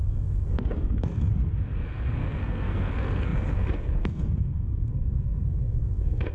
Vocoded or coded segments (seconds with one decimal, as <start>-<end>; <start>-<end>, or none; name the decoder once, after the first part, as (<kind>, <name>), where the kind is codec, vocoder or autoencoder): 0.0-6.3 (codec, SNAC)